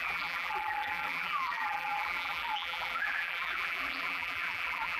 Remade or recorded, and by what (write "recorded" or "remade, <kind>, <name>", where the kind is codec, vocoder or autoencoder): remade, vocoder, BigVGAN v2